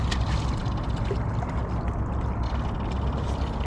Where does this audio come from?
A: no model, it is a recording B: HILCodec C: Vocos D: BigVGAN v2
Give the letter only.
A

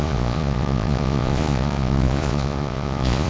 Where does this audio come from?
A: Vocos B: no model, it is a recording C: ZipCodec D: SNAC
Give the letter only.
A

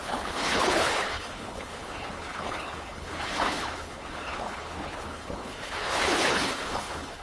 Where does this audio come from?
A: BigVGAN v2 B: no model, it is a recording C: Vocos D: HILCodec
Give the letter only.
D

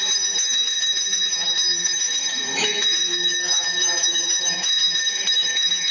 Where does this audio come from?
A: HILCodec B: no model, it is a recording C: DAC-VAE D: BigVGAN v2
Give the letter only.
C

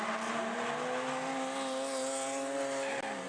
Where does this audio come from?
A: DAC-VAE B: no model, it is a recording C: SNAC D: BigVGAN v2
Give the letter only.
B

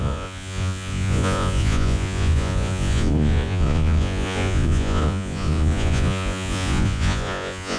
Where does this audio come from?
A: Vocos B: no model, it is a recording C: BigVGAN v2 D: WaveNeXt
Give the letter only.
A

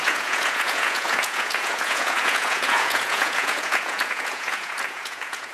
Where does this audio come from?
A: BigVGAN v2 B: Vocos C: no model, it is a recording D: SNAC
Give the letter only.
B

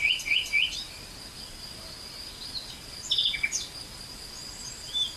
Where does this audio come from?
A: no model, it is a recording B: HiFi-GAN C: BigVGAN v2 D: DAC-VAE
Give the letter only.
A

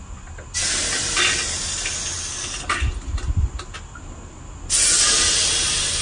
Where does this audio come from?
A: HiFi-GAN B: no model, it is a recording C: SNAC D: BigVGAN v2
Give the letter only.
B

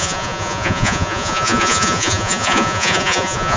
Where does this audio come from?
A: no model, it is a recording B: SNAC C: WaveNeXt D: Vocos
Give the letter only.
D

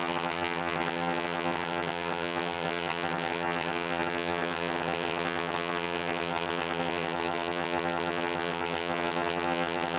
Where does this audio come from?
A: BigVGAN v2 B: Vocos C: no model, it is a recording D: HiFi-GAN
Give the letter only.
D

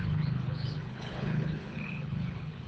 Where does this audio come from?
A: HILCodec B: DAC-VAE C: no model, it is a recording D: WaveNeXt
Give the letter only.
A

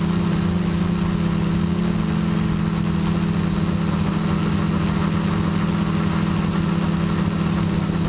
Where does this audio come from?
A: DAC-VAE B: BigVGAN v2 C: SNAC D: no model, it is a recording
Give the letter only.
D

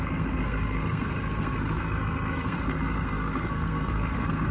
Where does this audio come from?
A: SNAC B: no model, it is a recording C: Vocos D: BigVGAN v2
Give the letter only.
A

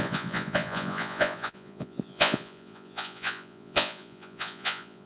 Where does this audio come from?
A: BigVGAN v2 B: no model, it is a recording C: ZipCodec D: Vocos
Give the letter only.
D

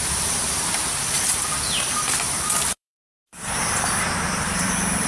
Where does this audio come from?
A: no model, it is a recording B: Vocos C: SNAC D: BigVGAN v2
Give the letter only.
D